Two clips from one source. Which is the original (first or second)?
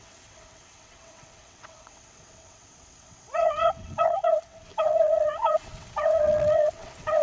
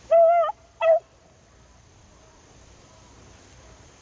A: second